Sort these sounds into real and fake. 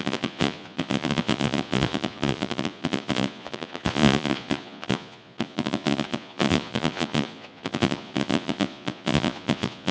fake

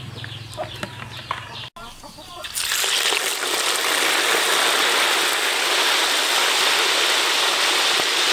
real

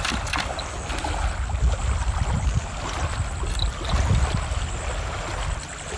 real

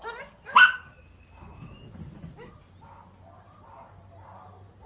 real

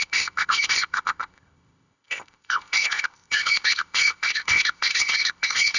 fake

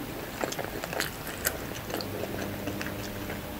real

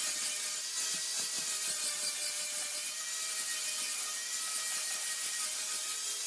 real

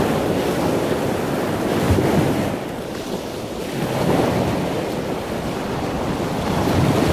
real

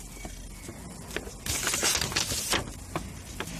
real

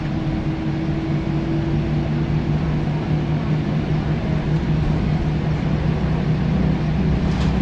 real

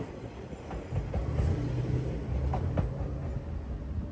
real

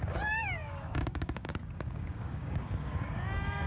fake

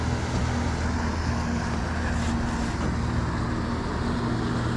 real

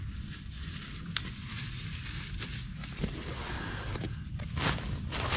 real